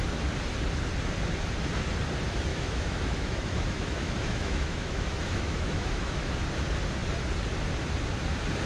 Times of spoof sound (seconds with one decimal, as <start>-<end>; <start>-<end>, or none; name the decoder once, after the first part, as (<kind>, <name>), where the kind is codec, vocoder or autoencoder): 2.5-6.3 (autoencoder, DAC-VAE)